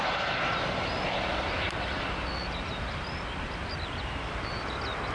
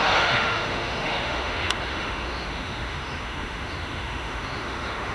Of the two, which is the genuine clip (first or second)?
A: first